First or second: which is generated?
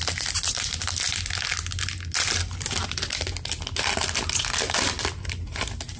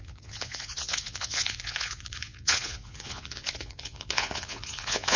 second